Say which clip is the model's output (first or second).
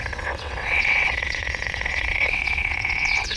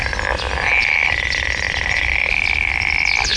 first